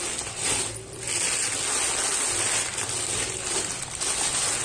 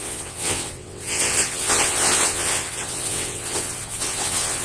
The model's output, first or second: second